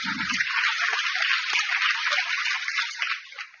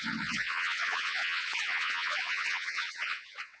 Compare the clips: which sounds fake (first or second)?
second